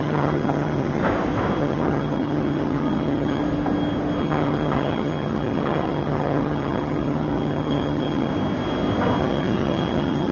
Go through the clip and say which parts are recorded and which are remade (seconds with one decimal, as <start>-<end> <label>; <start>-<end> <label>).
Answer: 0.0-1.0 remade; 1.0-1.6 recorded; 1.6-3.4 remade; 3.4-4.2 recorded; 4.2-8.3 remade; 8.3-9.2 recorded; 9.2-10.3 remade